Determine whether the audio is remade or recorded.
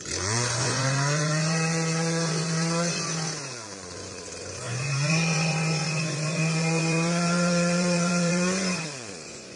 remade